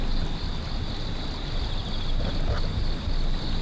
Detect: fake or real real